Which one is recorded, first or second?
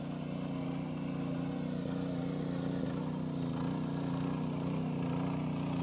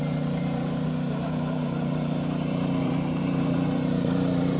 first